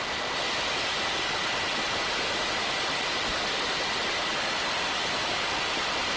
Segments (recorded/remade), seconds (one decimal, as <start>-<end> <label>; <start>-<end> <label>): 0.0-6.2 recorded